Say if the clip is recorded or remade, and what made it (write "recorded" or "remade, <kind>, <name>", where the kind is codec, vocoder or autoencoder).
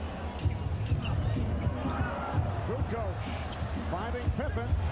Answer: recorded